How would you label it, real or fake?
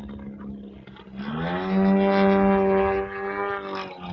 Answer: real